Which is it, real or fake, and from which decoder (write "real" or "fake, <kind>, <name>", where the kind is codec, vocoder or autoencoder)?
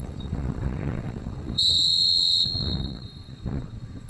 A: fake, vocoder, WaveNeXt